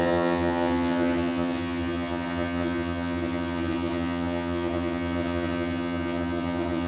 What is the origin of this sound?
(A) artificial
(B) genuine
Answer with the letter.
A